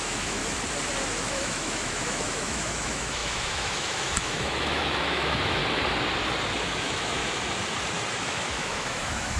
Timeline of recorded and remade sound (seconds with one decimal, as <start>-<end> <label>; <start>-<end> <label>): 0.0-0.4 remade; 0.4-1.2 recorded; 1.2-5.6 remade; 5.6-6.8 recorded; 6.8-7.2 remade; 7.2-8.1 recorded; 8.1-9.4 remade